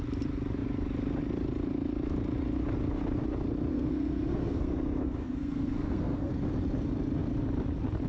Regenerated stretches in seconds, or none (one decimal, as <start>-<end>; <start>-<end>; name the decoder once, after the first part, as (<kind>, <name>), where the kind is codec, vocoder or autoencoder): 3.7-6.3 (codec, SNAC)